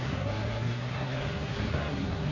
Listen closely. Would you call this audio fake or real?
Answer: fake